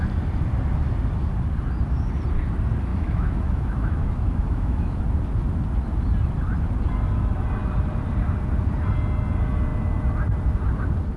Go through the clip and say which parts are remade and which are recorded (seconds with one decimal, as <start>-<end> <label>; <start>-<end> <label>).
0.0-2.9 recorded; 2.9-5.0 remade; 5.0-11.2 recorded